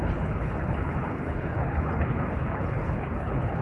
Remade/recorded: remade